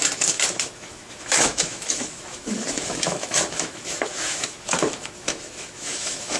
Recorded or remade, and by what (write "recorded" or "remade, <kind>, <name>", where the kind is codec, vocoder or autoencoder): remade, autoencoder, DAC-VAE